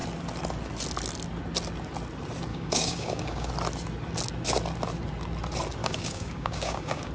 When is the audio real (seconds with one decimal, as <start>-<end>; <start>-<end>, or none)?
0.0-2.5; 3.5-5.8